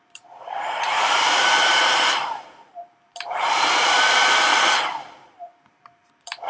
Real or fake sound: fake